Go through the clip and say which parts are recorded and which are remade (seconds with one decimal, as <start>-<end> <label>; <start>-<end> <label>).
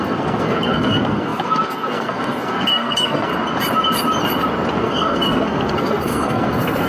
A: 0.0-3.3 remade; 3.3-4.7 recorded; 4.7-6.9 remade